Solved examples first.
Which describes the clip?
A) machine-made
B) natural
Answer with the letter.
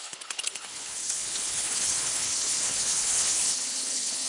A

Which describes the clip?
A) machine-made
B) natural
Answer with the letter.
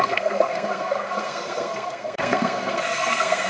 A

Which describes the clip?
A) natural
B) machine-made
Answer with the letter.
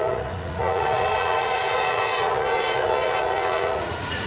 B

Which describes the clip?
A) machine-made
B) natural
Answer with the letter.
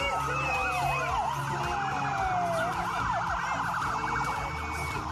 B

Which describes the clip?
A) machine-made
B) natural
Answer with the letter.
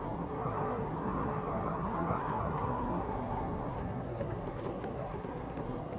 A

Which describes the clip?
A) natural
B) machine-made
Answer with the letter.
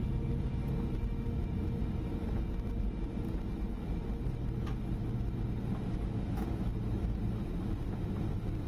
A